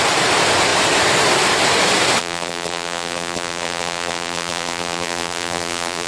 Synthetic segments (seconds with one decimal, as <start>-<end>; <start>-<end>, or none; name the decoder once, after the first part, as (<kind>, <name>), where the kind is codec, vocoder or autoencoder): 2.2-6.1 (vocoder, BigVGAN v2)